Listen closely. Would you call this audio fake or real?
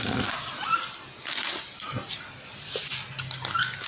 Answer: real